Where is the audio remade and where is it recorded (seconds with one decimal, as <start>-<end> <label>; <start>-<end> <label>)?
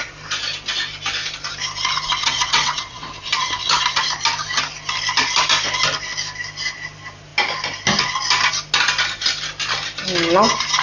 0.0-2.2 recorded; 2.2-3.1 remade; 3.1-10.8 recorded